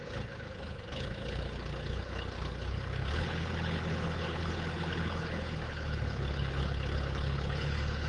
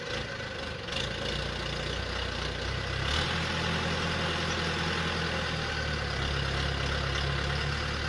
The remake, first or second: first